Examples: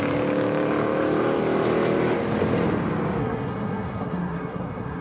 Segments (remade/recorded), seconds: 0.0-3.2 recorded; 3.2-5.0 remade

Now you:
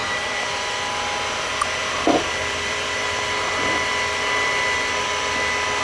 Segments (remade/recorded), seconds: 0.0-1.0 remade; 1.0-1.8 recorded; 1.8-3.9 remade; 3.9-5.8 recorded

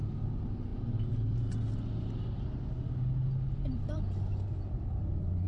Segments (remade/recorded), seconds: 0.0-5.5 recorded

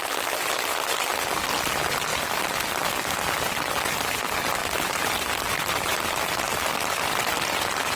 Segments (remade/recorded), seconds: 0.0-8.0 recorded

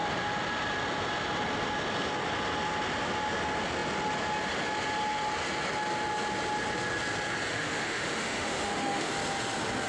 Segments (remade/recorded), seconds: 0.0-7.5 recorded; 7.5-9.1 remade; 9.1-9.9 recorded